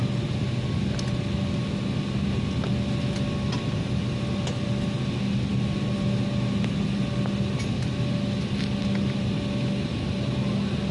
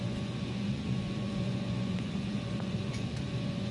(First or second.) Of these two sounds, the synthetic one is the second